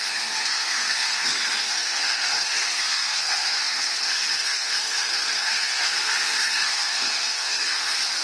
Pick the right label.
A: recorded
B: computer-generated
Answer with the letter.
B